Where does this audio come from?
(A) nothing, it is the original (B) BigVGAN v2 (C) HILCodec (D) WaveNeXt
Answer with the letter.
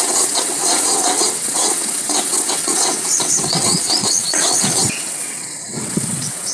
D